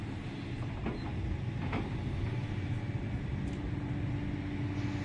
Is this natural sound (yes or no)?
yes